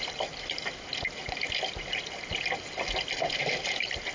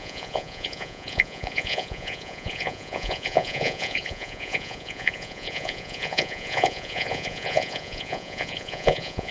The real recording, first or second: first